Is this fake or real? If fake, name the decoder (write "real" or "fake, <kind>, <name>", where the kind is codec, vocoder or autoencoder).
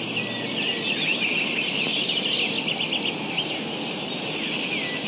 real